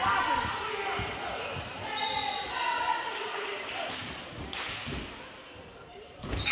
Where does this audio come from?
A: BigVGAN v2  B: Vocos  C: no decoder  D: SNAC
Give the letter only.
C